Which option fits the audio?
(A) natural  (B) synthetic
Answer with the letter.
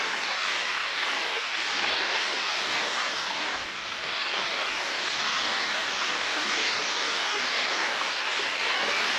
B